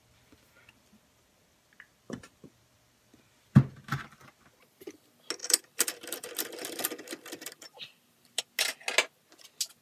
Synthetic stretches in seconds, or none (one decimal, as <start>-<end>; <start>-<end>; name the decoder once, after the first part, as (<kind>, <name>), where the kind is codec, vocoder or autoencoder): 0.0-4.9 (vocoder, BigVGAN v2); 5.4-8.4